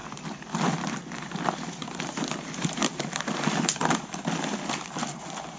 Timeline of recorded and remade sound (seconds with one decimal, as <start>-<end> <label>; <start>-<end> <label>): 0.0-5.6 remade